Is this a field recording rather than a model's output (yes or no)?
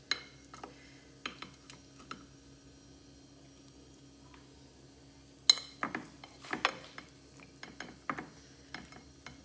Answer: yes